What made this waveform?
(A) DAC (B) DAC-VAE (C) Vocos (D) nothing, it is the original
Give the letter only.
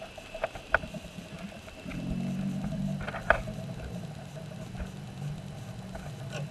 D